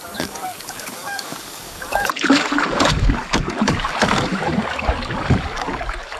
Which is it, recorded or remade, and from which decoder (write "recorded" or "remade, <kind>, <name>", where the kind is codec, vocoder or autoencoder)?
remade, codec, DAC